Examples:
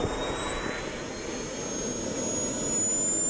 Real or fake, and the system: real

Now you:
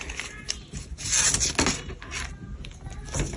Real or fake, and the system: real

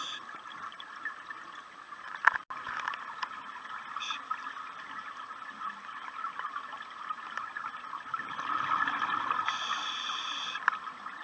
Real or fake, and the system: real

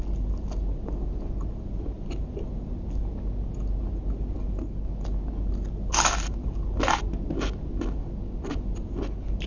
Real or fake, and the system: real